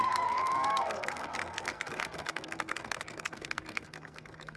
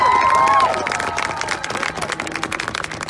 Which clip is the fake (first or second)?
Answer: first